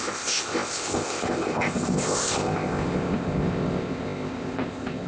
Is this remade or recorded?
remade